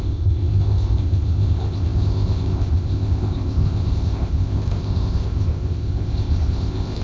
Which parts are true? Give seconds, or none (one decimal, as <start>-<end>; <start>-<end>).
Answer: none

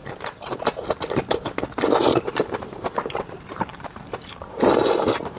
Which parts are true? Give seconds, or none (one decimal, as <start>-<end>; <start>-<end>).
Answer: 0.0-2.0